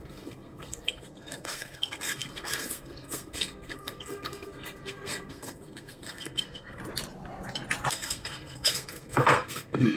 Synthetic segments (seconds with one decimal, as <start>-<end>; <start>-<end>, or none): 0.0-6.8; 7.9-10.0

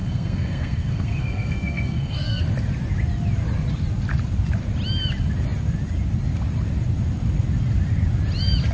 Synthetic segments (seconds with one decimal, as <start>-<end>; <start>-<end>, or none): 0.0-2.4

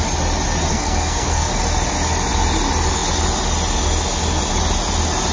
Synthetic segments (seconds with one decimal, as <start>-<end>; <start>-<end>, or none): 0.7-1.5